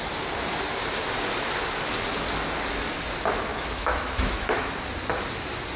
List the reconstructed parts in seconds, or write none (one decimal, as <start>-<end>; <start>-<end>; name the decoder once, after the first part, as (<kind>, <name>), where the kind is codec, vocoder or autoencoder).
3.5-4.7 (autoencoder, DAC-VAE)